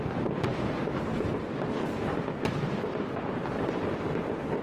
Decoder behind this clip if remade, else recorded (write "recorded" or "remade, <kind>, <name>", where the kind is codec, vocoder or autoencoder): recorded